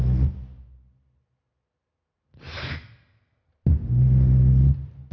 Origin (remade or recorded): recorded